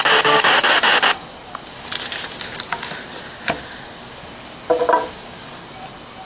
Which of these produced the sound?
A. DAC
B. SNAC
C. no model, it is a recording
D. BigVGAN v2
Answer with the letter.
C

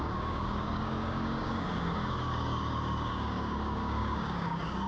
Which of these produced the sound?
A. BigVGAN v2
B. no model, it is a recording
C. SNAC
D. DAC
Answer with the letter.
D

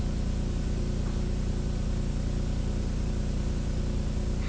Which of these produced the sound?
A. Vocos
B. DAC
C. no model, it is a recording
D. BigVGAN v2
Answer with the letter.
C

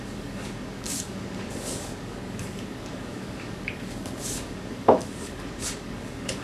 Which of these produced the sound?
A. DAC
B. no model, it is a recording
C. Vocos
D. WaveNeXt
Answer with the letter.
A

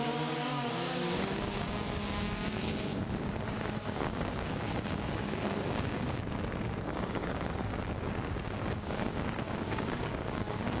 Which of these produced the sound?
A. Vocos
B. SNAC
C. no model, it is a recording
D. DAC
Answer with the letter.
D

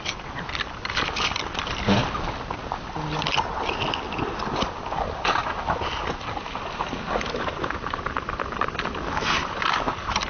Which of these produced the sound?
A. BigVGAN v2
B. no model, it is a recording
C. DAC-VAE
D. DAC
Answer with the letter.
B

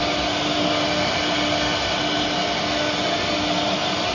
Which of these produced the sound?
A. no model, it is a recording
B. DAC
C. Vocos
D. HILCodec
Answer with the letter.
A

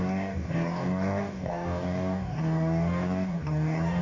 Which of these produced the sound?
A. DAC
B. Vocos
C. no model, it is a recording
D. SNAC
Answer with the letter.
A